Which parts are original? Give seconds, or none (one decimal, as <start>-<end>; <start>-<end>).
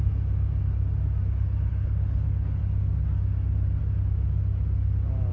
0.0-1.7; 2.6-5.3